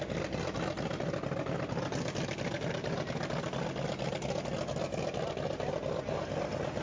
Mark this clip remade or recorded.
recorded